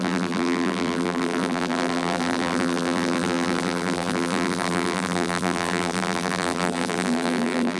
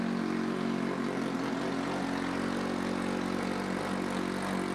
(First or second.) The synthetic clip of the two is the first